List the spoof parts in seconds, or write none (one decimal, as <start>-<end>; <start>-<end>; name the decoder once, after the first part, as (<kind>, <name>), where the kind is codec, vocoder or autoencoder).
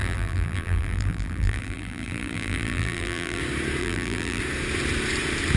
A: 0.0-3.4 (vocoder, BigVGAN v2); 3.8-4.4